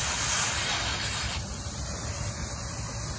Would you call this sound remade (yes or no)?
no